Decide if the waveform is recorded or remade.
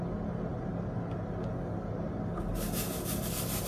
recorded